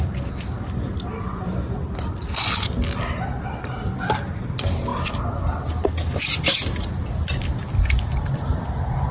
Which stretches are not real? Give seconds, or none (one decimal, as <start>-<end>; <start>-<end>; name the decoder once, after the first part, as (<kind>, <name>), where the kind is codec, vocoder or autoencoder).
none